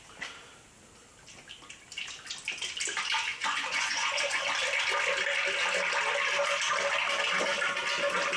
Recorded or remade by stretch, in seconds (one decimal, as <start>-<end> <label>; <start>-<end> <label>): 0.0-3.3 recorded; 3.3-4.4 remade; 4.4-8.4 recorded